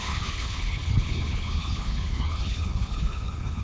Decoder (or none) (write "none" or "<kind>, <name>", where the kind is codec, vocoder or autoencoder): codec, HILCodec